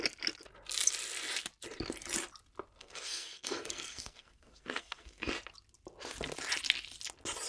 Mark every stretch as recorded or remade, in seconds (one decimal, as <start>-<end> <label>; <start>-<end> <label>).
0.0-2.8 recorded; 2.8-5.3 remade; 5.3-7.5 recorded